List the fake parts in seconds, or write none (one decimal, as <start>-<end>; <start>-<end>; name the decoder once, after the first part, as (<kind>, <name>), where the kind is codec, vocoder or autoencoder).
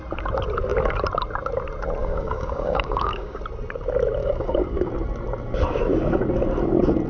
2.0-3.4 (codec, DAC); 4.2-4.9